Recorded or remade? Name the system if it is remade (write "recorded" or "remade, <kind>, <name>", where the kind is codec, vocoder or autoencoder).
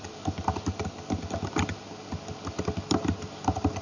recorded